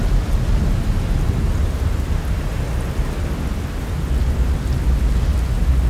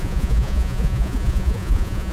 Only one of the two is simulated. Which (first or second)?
second